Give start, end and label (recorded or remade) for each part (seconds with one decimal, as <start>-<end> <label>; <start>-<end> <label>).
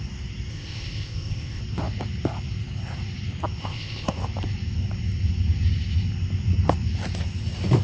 0.0-0.5 recorded; 0.5-1.6 remade; 1.6-3.6 recorded; 3.6-4.2 remade; 4.2-7.8 recorded